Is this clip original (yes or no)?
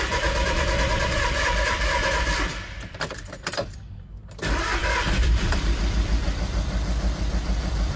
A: no